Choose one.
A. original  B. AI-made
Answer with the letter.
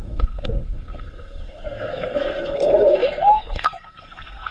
B